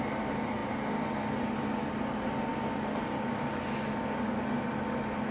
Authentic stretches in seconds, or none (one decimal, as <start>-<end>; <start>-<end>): 0.0-5.3